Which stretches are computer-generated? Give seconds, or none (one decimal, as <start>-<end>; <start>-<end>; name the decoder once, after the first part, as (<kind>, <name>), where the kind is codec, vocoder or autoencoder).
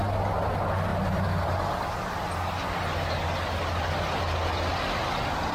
none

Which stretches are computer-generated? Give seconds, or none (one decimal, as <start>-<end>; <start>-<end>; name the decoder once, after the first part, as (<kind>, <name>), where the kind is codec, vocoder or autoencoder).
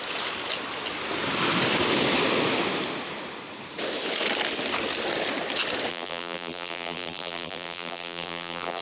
5.9-8.8 (vocoder, BigVGAN v2)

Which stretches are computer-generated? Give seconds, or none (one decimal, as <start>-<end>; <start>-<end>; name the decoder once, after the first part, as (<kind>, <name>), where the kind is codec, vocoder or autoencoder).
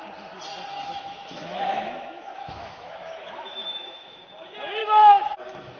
0.7-4.2 (autoencoder, DAC-VAE); 4.8-5.8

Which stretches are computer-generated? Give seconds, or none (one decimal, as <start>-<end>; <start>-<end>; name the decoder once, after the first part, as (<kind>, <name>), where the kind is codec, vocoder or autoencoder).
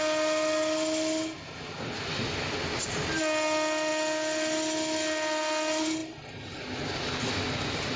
none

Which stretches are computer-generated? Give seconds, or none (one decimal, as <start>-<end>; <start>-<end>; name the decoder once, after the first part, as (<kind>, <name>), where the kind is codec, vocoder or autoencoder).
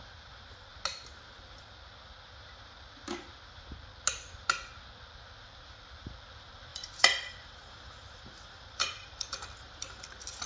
6.7-10.1 (vocoder, BigVGAN v2)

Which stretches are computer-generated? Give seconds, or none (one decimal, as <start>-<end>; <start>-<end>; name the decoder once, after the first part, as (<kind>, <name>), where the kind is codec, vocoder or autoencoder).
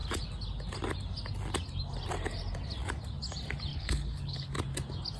3.7-4.5 (codec, HILCodec)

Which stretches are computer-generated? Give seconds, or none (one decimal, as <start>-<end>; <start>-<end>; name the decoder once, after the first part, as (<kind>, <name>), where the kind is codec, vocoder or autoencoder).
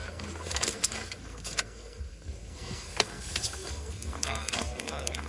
0.0-5.3 (codec, SNAC)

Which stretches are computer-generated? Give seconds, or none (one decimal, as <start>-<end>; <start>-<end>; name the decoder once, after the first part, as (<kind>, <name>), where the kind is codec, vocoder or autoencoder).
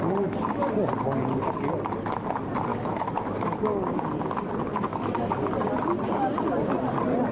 2.7-3.6 (autoencoder, DAC-VAE)